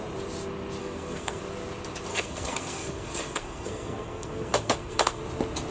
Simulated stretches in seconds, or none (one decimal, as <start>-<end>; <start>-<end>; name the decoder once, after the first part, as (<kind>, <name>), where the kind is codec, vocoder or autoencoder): 0.8-1.4 (codec, SNAC); 2.1-5.2